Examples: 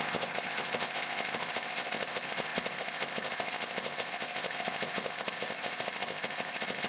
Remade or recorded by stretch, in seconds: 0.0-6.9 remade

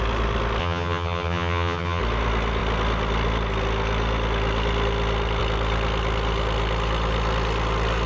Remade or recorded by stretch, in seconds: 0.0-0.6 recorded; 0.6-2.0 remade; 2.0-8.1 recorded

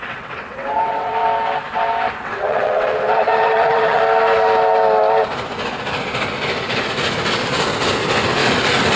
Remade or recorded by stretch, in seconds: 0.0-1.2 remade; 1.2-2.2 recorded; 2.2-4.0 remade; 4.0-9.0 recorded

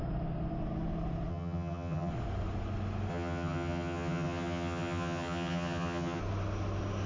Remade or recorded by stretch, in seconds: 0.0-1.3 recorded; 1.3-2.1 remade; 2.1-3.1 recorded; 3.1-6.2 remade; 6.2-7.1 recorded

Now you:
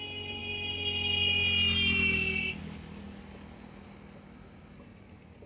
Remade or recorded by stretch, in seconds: 0.0-5.5 recorded

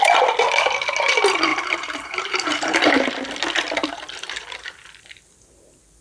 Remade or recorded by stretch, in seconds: 0.0-1.5 recorded; 1.5-3.1 remade; 3.1-3.8 recorded; 3.8-4.7 remade; 4.7-6.0 recorded

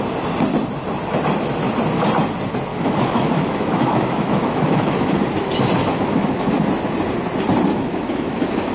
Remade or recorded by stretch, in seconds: 0.0-2.7 recorded; 2.7-5.1 remade; 5.1-5.8 recorded; 5.8-6.5 remade; 6.5-7.7 recorded; 7.7-8.7 remade